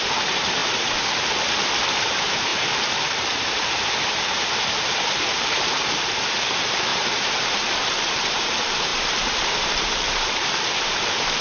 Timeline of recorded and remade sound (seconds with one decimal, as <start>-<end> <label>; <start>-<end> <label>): 0.0-0.6 remade; 0.6-1.9 recorded; 1.9-11.4 remade